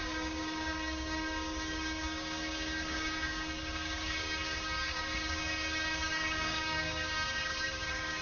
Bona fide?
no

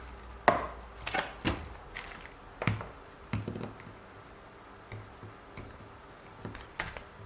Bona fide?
yes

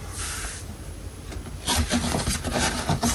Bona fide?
yes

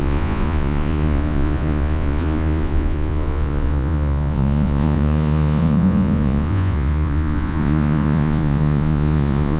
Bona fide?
no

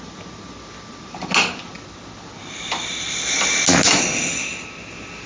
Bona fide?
yes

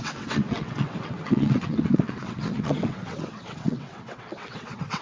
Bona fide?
no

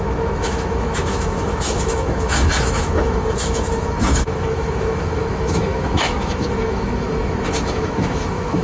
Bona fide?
no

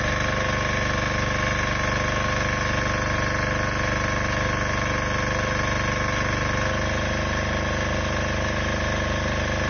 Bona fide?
yes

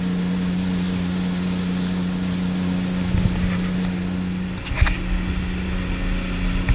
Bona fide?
yes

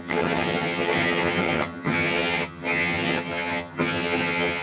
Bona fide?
no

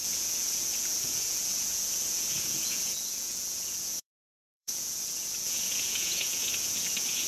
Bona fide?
no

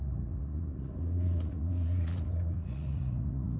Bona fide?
no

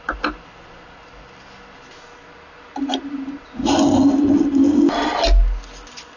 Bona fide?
yes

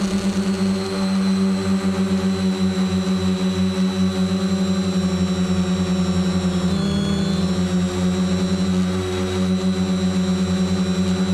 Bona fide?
yes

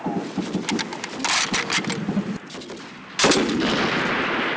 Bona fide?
yes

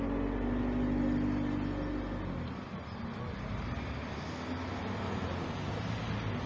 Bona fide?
yes